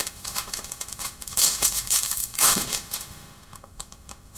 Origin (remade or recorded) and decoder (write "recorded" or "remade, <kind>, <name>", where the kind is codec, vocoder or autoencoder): remade, autoencoder, DAC-VAE